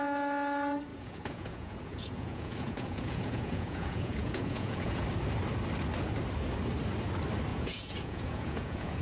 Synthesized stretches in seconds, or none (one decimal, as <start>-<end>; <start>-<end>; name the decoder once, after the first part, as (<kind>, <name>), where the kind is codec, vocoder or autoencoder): 0.9-5.0 (vocoder, Vocos); 7.5-9.0